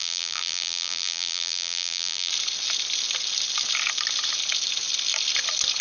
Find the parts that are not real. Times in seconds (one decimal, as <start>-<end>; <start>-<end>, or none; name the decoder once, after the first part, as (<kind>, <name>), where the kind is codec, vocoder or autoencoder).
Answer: 0.0-2.3 (vocoder, BigVGAN v2)